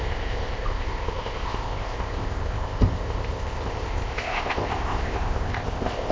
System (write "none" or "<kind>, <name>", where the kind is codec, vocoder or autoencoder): codec, ZipCodec